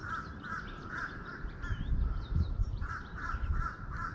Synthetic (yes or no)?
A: yes